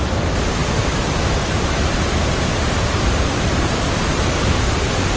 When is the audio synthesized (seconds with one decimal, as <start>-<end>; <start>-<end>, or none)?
0.6-3.7